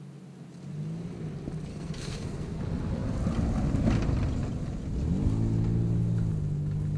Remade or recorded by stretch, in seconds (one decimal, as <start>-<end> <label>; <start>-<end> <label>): 0.0-1.7 recorded; 1.7-2.6 remade; 2.6-7.0 recorded